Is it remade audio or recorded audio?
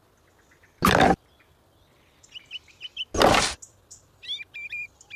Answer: recorded